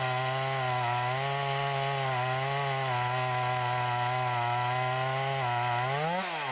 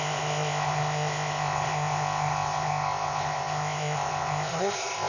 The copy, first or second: second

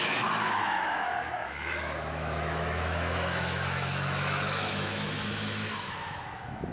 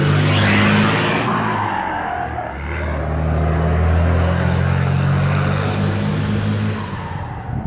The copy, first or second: first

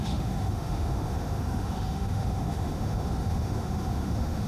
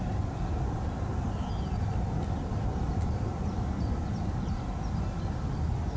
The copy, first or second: first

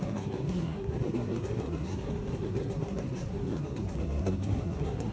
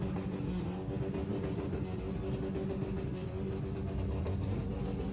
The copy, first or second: first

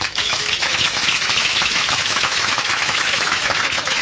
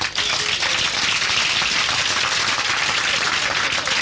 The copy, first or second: first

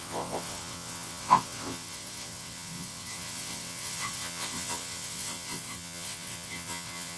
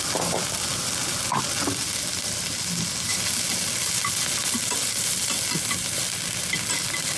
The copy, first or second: first